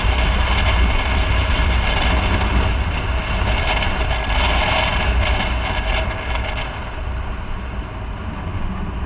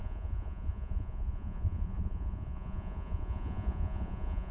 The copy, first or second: second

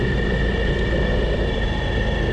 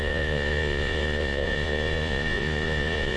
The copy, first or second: second